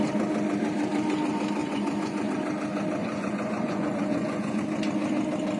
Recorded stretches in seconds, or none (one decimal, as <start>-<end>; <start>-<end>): 0.0-1.6; 2.3-3.0; 4.6-5.6